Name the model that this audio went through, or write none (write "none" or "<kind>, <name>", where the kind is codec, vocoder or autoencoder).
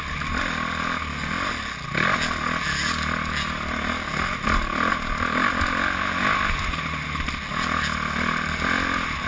none